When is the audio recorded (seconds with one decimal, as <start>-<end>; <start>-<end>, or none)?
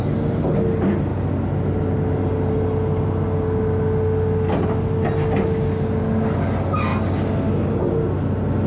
0.0-8.7